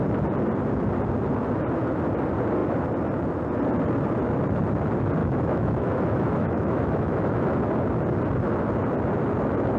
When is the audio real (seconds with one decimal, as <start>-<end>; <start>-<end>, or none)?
0.0-5.2; 7.4-9.8